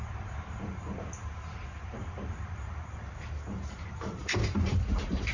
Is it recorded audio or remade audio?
remade